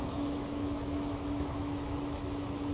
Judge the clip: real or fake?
fake